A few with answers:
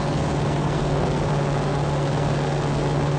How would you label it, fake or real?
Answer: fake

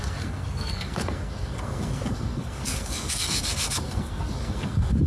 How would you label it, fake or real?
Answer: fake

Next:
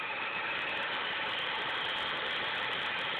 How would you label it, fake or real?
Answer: fake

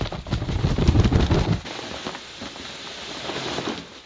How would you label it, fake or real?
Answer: real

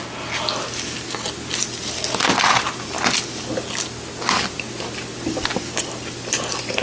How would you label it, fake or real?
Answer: real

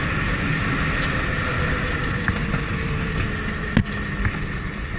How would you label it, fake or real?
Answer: real